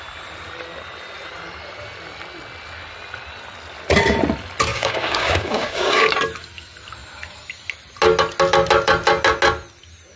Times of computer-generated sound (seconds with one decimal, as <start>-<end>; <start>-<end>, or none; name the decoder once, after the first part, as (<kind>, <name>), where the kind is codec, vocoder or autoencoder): 4.7-6.1 (codec, DAC)

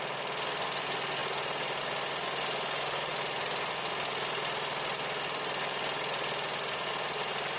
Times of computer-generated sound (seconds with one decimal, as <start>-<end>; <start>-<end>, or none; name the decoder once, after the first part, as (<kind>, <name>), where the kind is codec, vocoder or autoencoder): none

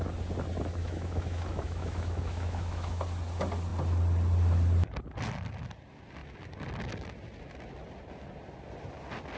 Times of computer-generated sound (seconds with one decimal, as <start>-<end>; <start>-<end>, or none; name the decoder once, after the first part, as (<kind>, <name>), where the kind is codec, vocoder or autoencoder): 0.8-3.0 (autoencoder, DAC-VAE)

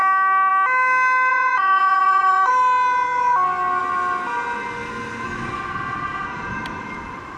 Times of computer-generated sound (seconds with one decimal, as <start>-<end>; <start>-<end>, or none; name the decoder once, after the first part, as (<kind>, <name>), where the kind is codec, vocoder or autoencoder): 1.3-2.5 (vocoder, Vocos)